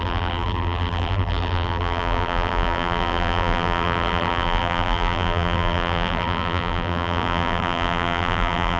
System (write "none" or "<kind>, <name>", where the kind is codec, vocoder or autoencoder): vocoder, BigVGAN v2